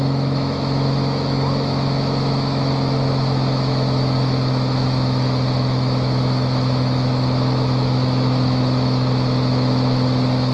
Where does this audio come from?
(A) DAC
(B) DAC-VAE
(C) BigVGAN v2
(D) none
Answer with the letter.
B